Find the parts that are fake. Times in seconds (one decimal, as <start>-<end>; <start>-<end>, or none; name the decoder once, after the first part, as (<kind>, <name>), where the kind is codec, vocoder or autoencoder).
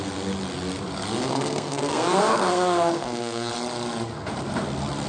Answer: 1.3-3.5 (codec, SNAC)